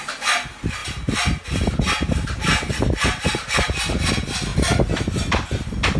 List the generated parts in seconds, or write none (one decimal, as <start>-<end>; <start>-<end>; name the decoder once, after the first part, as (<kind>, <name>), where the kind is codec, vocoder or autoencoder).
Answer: none